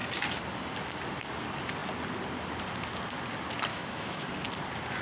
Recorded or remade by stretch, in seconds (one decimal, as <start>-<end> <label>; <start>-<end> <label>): 0.0-3.7 recorded; 3.7-4.3 remade; 4.3-5.0 recorded